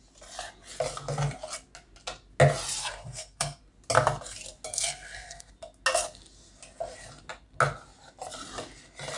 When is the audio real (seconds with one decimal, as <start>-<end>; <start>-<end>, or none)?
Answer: 0.0-2.8; 3.6-4.7; 5.5-9.2